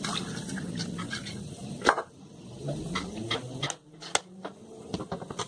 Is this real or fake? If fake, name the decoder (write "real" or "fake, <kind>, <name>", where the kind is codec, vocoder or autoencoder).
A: real